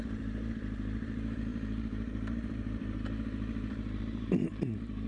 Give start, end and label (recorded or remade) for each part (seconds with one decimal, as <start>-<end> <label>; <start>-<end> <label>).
0.0-5.1 remade